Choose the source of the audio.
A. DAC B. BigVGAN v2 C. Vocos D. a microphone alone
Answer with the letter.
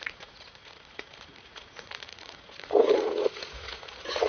C